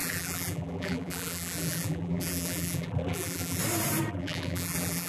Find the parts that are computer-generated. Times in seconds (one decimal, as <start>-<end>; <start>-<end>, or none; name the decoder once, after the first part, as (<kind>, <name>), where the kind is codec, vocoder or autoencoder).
0.0-3.6 (vocoder, BigVGAN v2); 4.1-5.1